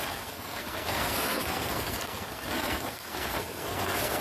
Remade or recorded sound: remade